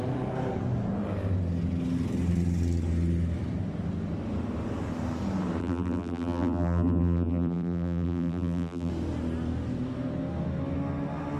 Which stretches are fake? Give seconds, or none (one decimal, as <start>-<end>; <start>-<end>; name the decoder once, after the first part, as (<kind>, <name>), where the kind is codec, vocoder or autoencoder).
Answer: 5.6-8.9 (vocoder, BigVGAN v2)